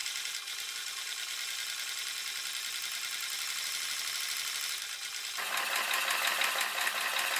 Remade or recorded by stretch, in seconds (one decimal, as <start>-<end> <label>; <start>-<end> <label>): 0.0-7.4 recorded